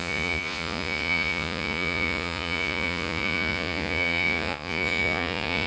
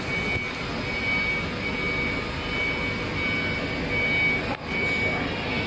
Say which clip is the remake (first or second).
first